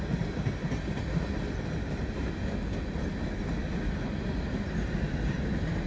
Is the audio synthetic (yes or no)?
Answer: no